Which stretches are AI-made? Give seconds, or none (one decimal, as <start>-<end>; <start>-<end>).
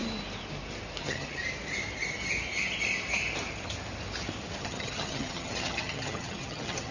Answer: 1.0-1.4; 4.6-6.9